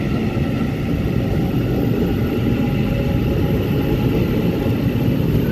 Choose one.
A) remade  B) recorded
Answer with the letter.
B